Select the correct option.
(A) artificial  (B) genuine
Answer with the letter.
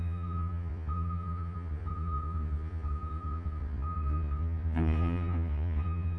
A